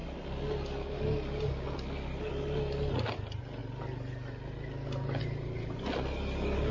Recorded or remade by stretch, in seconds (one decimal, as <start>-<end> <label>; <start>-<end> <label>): 0.0-6.7 recorded